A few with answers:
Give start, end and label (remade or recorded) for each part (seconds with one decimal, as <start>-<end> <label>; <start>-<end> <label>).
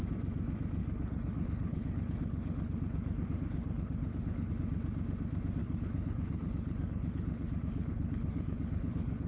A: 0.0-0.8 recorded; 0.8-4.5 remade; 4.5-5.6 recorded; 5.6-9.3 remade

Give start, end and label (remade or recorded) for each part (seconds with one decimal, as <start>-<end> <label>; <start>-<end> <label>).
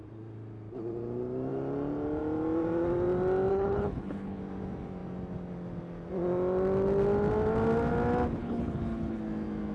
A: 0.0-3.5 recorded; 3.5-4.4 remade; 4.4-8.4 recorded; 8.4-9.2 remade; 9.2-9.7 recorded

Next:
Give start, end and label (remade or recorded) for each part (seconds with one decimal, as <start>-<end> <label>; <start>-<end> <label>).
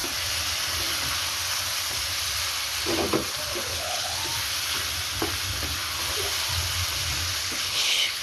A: 0.0-3.5 recorded; 3.5-4.2 remade; 4.2-7.4 recorded; 7.4-8.2 remade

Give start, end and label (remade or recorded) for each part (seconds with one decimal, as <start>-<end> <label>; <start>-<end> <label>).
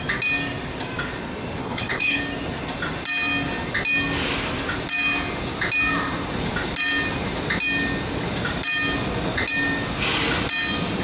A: 0.0-1.6 recorded; 1.6-2.2 remade; 2.2-11.0 recorded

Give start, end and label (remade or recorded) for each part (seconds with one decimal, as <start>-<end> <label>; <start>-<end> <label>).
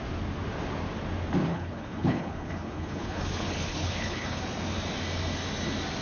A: 0.0-1.5 recorded; 1.5-4.4 remade; 4.4-6.0 recorded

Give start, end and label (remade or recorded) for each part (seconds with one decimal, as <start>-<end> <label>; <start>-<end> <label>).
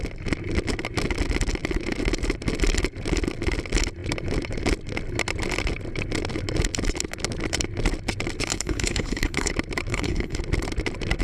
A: 0.0-8.5 recorded; 8.5-9.5 remade; 9.5-9.9 recorded; 9.9-10.4 remade; 10.4-11.2 recorded